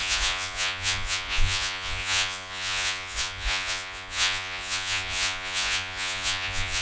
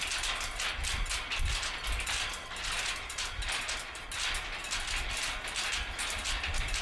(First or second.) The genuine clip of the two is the second